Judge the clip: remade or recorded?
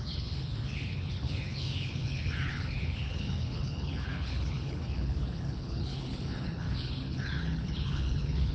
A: remade